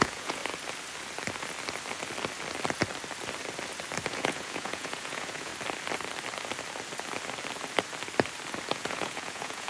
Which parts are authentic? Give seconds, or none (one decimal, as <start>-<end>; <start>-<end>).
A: 0.4-4.1; 5.5-8.7